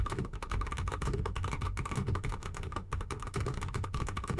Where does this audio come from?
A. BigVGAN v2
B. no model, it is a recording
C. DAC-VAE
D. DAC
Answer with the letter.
C